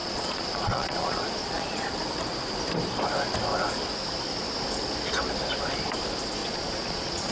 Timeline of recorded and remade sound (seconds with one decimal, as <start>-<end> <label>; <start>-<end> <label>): 0.0-1.9 remade; 1.9-6.4 recorded; 6.4-7.3 remade